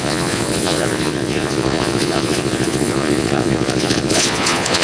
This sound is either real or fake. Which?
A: fake